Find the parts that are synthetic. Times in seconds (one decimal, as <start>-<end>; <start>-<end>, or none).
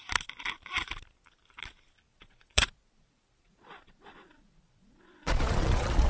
2.1-6.1